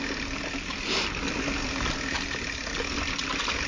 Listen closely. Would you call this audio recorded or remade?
recorded